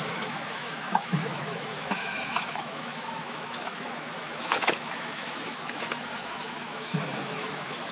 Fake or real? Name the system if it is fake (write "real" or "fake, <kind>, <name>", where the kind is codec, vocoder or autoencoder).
fake, autoencoder, DAC-VAE